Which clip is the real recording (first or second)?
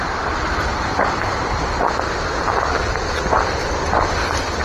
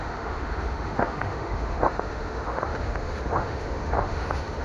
first